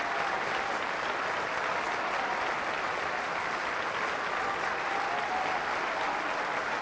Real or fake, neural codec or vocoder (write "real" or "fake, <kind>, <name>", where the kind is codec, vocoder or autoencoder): real